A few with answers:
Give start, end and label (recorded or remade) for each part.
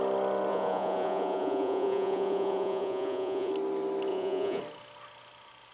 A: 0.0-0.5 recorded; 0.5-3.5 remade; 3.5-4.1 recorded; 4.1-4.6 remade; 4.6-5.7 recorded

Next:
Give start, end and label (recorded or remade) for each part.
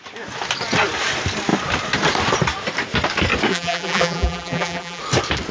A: 0.0-3.5 recorded; 3.5-5.0 remade; 5.0-5.5 recorded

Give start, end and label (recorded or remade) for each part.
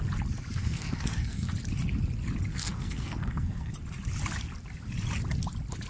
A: 0.0-0.6 recorded; 0.6-1.5 remade; 1.5-2.5 recorded; 2.5-3.7 remade; 3.7-5.9 recorded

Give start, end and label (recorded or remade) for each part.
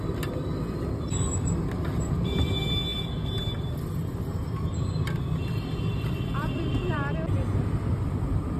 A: 0.0-8.6 recorded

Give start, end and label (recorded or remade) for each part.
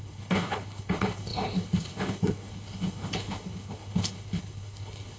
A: 0.0-5.2 remade